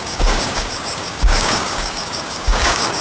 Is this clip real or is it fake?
fake